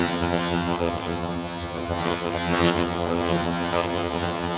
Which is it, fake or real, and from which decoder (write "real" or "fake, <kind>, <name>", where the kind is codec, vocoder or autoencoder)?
fake, vocoder, HiFi-GAN